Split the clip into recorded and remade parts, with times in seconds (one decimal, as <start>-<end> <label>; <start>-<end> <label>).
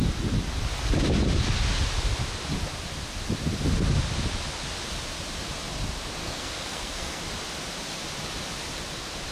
0.0-6.2 recorded; 6.2-7.2 remade; 7.2-9.3 recorded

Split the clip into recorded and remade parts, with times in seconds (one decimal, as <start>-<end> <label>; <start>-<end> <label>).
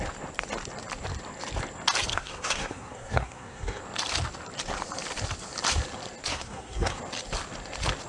0.0-2.1 recorded; 2.1-3.8 remade; 3.8-6.3 recorded; 6.3-7.0 remade; 7.0-8.1 recorded